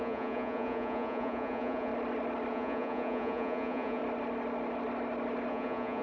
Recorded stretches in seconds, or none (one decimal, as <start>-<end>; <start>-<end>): 1.9-2.5; 4.0-5.5